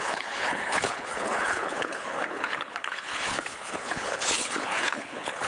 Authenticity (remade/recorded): remade